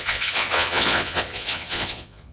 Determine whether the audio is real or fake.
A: fake